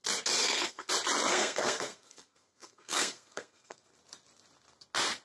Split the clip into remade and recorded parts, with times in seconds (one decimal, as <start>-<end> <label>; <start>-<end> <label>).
0.0-0.4 recorded; 0.4-0.9 remade; 0.9-1.3 recorded; 1.3-3.9 remade; 3.9-5.2 recorded